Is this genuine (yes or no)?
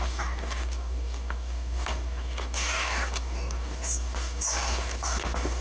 no